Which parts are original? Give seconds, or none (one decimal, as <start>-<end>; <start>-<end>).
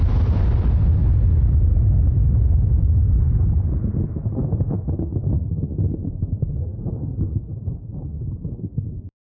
0.0-6.6; 7.4-9.3